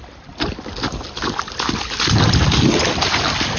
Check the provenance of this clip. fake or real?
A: real